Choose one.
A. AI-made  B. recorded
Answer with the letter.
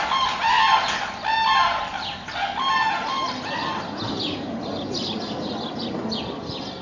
B